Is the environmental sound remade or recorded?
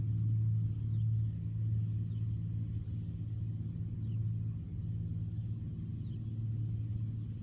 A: recorded